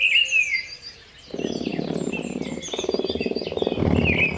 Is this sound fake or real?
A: real